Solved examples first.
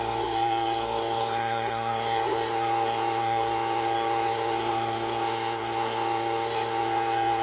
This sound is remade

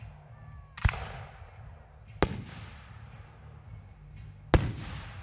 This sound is recorded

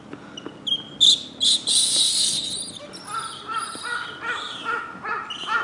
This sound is recorded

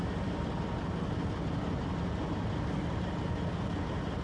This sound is recorded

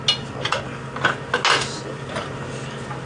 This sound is recorded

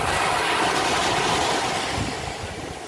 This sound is recorded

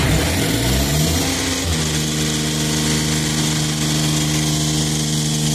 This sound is recorded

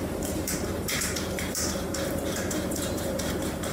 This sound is remade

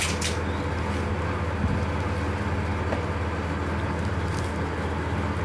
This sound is recorded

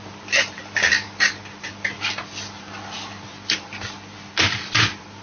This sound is recorded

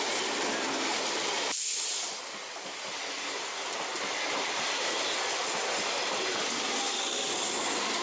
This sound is recorded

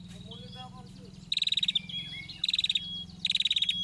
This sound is recorded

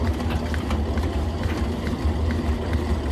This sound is recorded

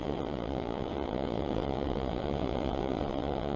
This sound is remade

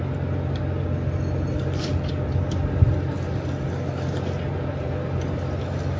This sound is recorded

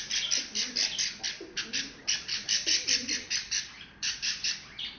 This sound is remade